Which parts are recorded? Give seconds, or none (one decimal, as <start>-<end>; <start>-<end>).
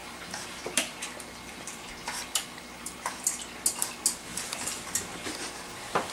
3.4-6.1